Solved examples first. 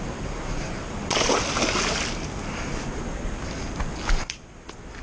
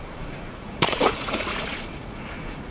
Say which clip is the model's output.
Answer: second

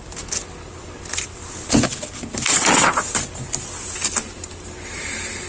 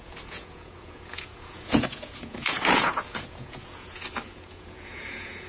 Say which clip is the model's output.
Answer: second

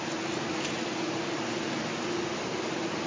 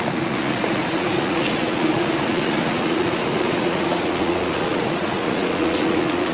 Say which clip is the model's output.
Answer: second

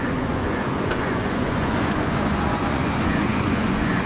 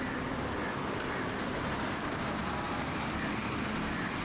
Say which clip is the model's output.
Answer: first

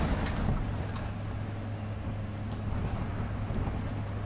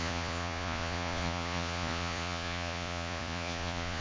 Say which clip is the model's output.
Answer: second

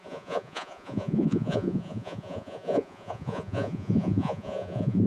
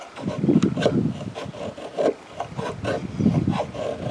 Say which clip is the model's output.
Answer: first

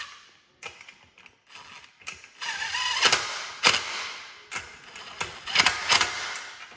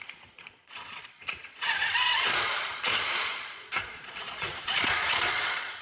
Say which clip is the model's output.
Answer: second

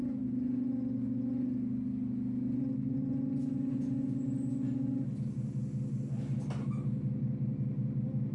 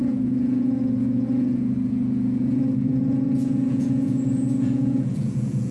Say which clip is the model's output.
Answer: second